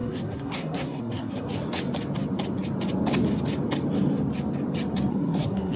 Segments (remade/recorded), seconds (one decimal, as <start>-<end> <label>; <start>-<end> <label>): 0.0-1.6 remade; 1.6-5.1 recorded; 5.1-5.8 remade